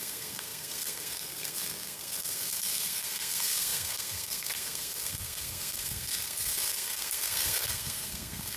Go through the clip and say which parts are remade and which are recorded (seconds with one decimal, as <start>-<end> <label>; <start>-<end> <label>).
0.0-8.6 remade

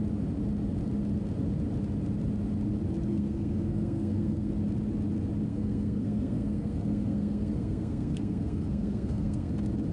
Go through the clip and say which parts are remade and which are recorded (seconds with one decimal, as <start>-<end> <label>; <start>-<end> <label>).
0.0-3.1 recorded; 3.1-4.5 remade; 4.5-5.5 recorded; 5.5-9.5 remade; 9.5-9.9 recorded

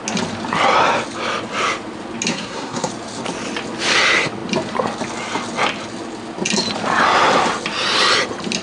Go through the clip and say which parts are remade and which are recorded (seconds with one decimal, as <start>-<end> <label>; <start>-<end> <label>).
0.0-2.3 recorded; 2.3-2.9 remade; 2.9-8.6 recorded

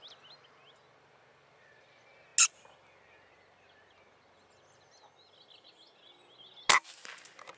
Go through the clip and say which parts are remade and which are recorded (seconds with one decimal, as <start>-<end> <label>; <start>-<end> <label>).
0.0-7.6 recorded

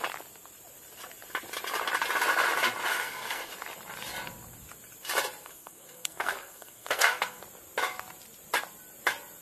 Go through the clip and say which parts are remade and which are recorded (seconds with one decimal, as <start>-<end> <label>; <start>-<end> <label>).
0.0-2.9 recorded; 2.9-3.5 remade; 3.5-5.4 recorded; 5.4-7.4 remade; 7.4-9.4 recorded

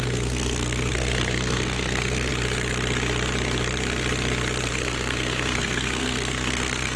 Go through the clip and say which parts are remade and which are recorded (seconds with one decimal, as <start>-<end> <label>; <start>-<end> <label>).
0.0-2.3 remade; 2.3-4.7 recorded; 4.7-7.0 remade

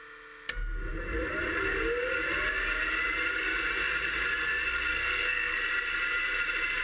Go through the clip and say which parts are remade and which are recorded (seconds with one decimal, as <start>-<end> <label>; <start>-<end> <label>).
0.0-4.9 recorded; 4.9-5.6 remade; 5.6-6.8 recorded

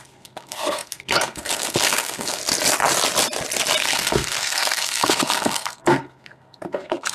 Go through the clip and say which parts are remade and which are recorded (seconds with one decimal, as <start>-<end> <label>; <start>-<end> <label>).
0.0-2.4 remade; 2.4-3.8 recorded; 3.8-7.1 remade